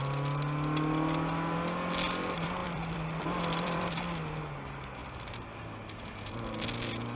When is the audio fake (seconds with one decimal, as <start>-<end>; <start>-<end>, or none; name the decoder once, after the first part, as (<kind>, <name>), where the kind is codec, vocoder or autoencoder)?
2.6-4.0 (vocoder, BigVGAN v2); 5.0-5.7